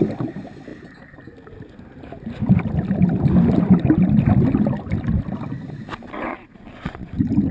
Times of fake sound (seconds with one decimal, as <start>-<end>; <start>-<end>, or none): 6.3-7.1